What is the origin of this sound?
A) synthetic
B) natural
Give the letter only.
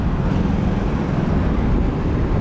B